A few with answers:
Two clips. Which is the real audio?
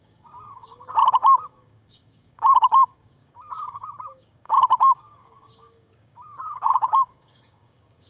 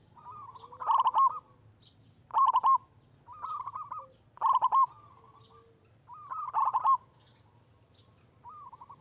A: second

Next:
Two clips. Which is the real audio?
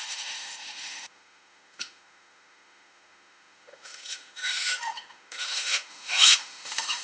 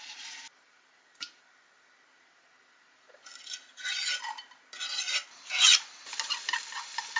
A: second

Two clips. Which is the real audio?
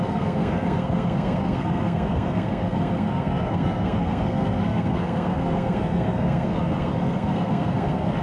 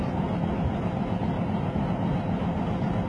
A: second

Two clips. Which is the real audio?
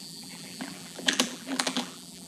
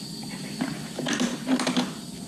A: second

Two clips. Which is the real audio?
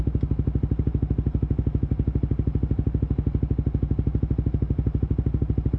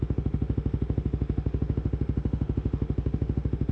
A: first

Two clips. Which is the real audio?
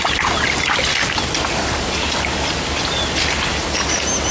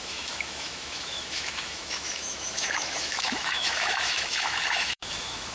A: first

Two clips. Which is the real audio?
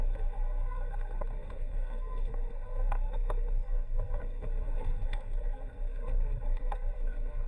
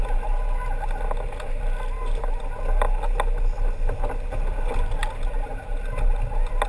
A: second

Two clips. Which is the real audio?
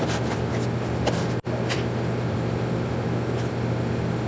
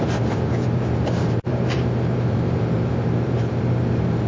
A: first